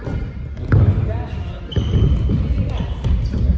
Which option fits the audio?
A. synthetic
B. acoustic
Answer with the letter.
B